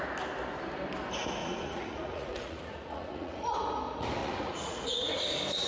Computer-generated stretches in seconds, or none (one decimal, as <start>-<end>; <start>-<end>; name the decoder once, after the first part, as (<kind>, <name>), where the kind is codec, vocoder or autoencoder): 1.4-3.6 (vocoder, Vocos); 4.2-5.1